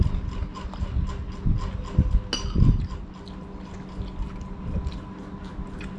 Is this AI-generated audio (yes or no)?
no